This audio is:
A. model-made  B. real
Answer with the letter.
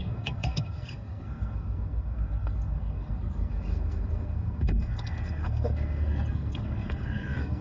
A